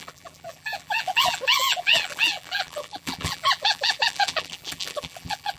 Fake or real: fake